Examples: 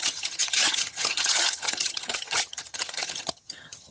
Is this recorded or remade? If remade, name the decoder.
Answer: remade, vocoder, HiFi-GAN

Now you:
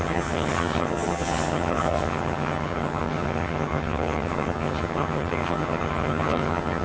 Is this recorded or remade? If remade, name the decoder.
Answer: remade, vocoder, HiFi-GAN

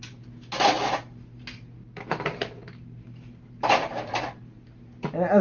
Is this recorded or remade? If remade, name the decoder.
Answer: recorded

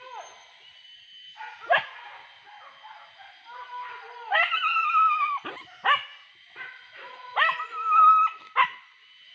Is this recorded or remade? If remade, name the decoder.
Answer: recorded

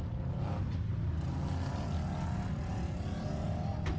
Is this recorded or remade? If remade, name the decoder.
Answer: recorded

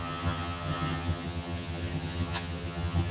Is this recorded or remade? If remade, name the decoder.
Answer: remade, vocoder, HiFi-GAN